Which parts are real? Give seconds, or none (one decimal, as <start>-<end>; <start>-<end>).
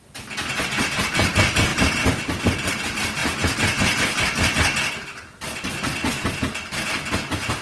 0.0-7.6